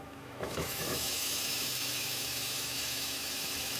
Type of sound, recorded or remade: remade